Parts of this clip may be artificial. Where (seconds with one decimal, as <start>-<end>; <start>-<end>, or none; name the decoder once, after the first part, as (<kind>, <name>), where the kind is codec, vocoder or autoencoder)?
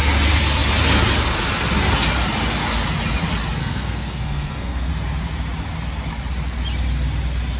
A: 3.6-4.9 (codec, SNAC)